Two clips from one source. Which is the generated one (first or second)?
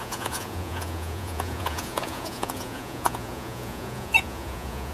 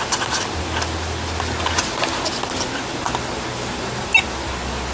first